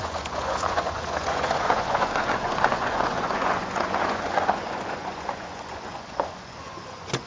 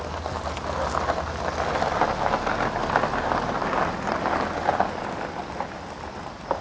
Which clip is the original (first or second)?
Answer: second